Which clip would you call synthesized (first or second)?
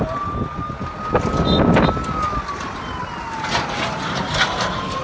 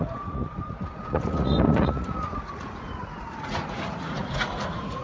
second